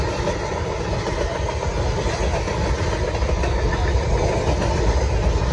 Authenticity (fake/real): real